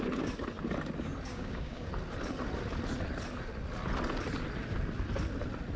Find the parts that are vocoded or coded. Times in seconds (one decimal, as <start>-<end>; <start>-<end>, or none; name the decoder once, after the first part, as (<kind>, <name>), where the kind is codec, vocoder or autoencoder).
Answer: 1.3-1.9 (codec, DAC)